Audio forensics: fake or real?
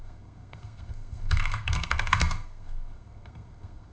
fake